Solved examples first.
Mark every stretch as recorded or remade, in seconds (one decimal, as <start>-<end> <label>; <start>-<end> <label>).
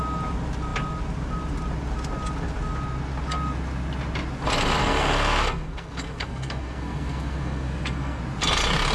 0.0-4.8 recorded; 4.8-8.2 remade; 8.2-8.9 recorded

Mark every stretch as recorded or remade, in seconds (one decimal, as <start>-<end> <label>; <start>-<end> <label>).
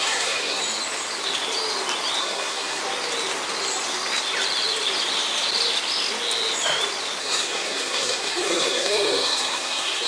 0.0-0.6 remade; 0.6-2.2 recorded; 2.2-2.8 remade; 2.8-7.2 recorded; 7.2-10.1 remade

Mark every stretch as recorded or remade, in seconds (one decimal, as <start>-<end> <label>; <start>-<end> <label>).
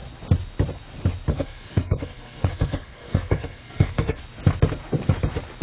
0.0-1.3 recorded; 1.3-4.2 remade; 4.2-5.6 recorded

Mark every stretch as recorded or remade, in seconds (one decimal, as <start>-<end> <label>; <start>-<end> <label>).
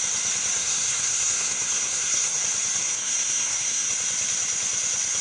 0.0-0.6 recorded; 0.6-2.4 remade; 2.4-2.8 recorded; 2.8-3.9 remade; 3.9-5.2 recorded